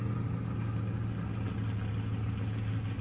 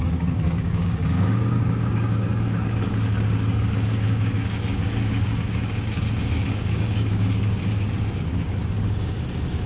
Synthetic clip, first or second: second